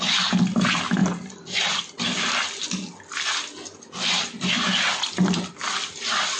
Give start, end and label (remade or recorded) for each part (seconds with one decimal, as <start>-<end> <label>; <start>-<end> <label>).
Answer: 0.0-6.4 recorded